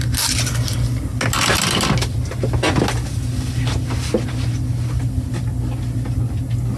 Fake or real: real